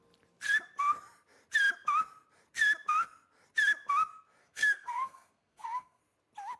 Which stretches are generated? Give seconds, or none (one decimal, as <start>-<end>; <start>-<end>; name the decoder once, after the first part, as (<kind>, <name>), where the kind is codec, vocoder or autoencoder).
4.4-6.0 (codec, SNAC)